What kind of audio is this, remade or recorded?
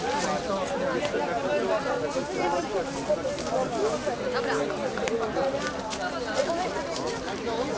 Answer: recorded